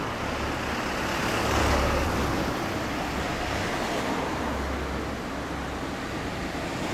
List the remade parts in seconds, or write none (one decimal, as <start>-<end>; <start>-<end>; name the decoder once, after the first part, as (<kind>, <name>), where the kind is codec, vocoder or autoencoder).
1.1-1.8 (codec, DAC)